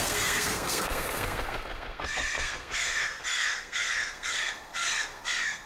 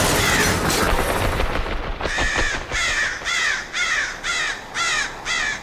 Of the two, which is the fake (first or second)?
first